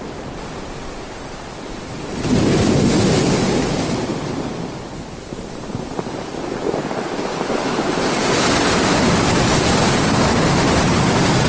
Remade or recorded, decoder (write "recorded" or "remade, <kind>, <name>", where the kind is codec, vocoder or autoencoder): recorded